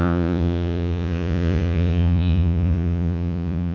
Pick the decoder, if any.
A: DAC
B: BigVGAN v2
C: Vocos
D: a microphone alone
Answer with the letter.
C